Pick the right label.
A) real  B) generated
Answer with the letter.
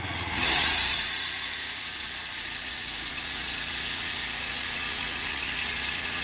B